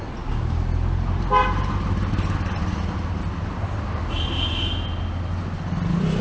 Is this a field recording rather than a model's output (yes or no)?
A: yes